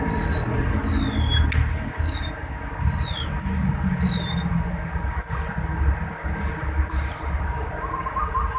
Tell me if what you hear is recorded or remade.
recorded